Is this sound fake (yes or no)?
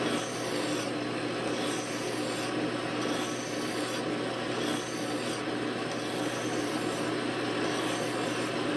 no